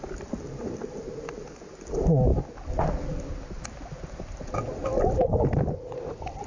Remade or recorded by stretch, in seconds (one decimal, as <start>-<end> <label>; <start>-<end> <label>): 0.0-0.8 recorded; 0.8-1.3 remade; 1.3-6.5 recorded